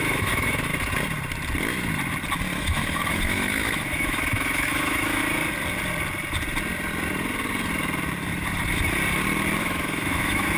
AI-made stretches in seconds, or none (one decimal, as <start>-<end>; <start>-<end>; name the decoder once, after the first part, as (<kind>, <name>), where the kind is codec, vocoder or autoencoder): 0.0-0.7 (autoencoder, DAC-VAE); 2.6-5.2; 9.6-10.6